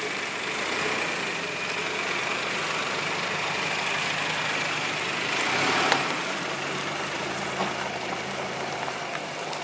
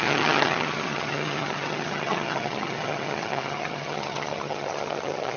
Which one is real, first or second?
first